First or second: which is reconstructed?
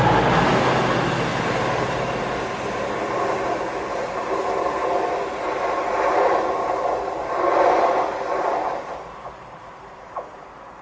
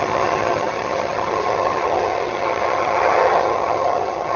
second